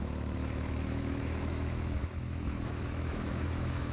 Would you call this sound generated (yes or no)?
yes